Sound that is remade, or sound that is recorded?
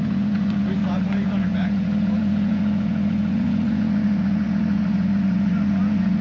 remade